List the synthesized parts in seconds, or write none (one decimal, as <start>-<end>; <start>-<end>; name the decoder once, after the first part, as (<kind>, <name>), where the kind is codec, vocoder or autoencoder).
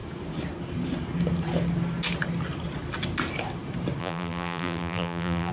4.0-5.5 (vocoder, BigVGAN v2)